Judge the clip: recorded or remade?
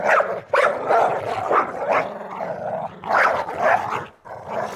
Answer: recorded